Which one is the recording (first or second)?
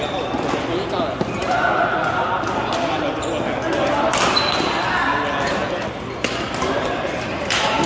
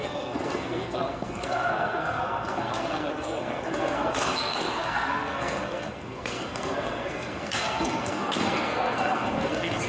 first